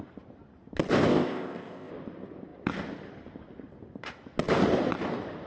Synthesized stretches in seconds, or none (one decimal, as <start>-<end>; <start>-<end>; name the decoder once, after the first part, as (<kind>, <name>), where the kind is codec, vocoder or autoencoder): 1.1-1.9 (codec, ZipCodec)